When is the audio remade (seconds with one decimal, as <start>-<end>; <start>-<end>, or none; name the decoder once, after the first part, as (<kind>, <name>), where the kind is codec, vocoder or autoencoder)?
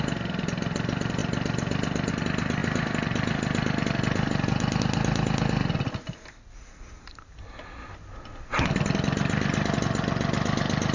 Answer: none